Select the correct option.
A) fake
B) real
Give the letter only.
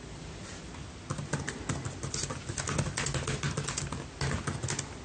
B